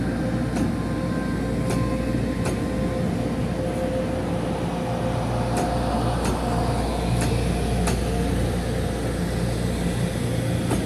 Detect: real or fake real